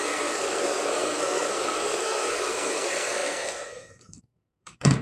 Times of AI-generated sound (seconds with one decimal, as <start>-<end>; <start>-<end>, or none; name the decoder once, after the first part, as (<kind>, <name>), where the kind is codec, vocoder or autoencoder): 0.0-5.0 (codec, SNAC)